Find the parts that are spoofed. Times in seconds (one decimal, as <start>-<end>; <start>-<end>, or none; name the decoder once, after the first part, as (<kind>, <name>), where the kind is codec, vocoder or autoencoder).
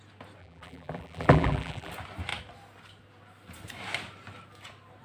0.4-1.9 (vocoder, BigVGAN v2)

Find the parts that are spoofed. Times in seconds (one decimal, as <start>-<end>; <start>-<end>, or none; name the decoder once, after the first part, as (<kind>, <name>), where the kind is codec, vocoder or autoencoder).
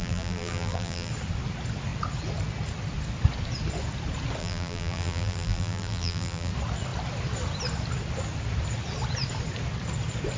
0.0-1.1 (vocoder, BigVGAN v2); 4.4-6.5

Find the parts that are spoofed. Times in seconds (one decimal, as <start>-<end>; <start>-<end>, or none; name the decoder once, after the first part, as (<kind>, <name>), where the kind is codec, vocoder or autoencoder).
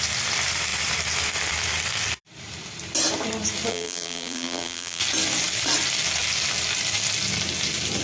3.7-5.0 (vocoder, BigVGAN v2)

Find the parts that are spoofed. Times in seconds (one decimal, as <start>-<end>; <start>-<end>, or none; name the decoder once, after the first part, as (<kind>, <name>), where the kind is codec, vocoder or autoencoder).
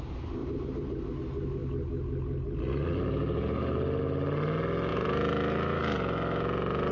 0.4-1.1 (vocoder, BigVGAN v2); 4.9-5.8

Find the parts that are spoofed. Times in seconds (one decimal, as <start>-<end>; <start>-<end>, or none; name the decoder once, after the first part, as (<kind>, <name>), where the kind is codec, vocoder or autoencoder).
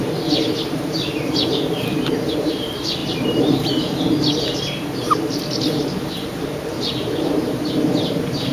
0.0-8.5 (vocoder, BigVGAN v2)